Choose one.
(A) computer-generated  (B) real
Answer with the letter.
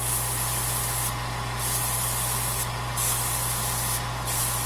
B